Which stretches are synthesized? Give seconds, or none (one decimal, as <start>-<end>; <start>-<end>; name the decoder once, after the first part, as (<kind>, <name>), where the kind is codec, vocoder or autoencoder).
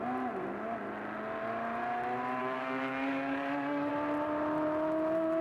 2.4-3.9 (codec, DAC)